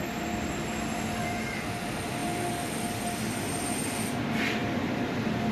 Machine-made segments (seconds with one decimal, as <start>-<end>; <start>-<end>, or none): none